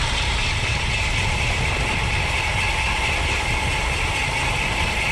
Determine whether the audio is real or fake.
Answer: real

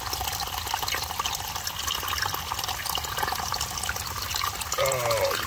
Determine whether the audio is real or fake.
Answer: real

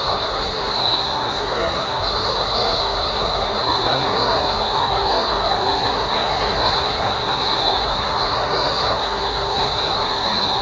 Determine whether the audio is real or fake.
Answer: fake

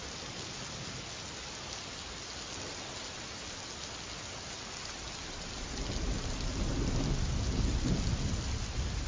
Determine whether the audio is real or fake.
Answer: real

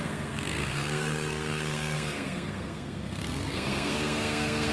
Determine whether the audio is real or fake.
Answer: fake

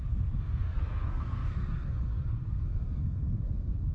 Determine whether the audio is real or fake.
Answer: fake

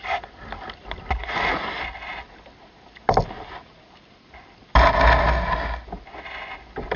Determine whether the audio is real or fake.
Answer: real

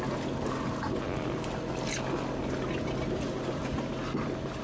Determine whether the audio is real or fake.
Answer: real